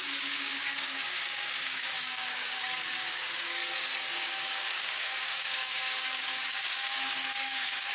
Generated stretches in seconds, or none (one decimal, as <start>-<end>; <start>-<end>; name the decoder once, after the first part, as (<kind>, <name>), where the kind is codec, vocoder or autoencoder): 0.0-3.6 (codec, DAC); 4.1-7.9

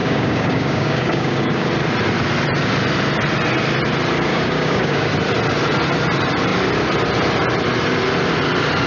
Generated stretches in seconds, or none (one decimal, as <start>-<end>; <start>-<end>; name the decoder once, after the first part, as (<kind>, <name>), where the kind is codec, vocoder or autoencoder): 0.0-1.7 (codec, DAC); 4.3-5.1